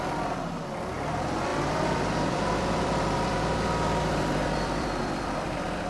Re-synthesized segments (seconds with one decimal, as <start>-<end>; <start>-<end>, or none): 0.0-5.9